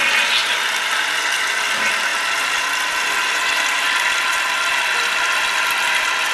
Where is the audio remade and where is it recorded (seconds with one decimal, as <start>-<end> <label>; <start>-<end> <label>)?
0.0-6.3 recorded